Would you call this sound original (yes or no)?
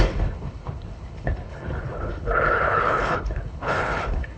no